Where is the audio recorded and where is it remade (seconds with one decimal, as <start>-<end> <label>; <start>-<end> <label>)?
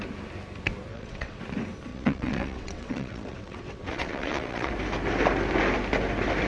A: 0.0-0.9 recorded; 0.9-1.4 remade; 1.4-1.9 recorded; 1.9-4.7 remade; 4.7-6.5 recorded